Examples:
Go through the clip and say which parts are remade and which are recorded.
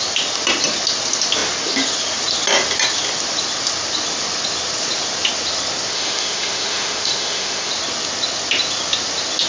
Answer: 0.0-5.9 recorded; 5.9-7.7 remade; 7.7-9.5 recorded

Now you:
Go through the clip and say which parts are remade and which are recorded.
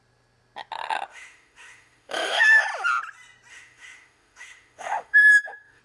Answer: 0.0-1.1 recorded; 1.1-2.6 remade; 2.6-3.5 recorded; 3.5-5.8 remade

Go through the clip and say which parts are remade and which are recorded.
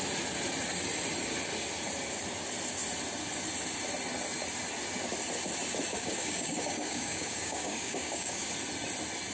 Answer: 0.0-5.9 recorded; 5.9-8.5 remade; 8.5-9.3 recorded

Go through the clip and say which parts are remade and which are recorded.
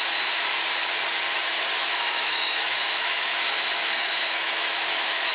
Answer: 0.0-1.8 recorded; 1.8-5.3 remade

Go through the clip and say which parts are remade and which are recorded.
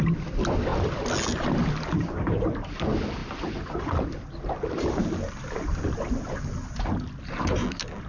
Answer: 0.0-8.1 recorded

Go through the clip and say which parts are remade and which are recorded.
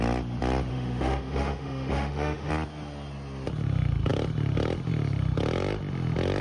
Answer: 0.0-0.7 recorded; 0.7-2.5 remade; 2.5-6.4 recorded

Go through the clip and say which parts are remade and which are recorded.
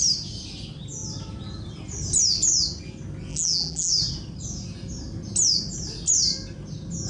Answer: 0.0-3.3 recorded; 3.3-3.9 remade; 3.9-7.1 recorded